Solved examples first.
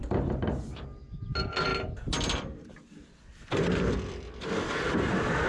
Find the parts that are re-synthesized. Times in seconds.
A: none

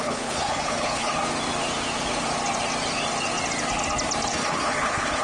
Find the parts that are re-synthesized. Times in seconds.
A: 0.0-1.2; 4.3-5.2

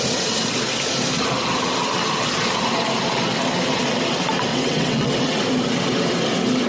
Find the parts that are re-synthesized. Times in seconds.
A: 4.5-5.4

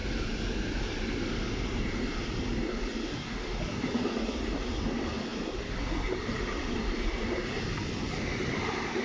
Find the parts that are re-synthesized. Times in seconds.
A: none

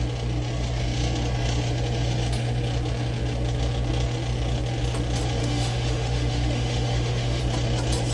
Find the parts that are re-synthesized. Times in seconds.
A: 5.4-7.4

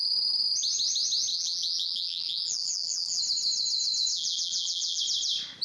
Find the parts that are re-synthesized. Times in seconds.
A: 1.3-3.2; 4.1-5.0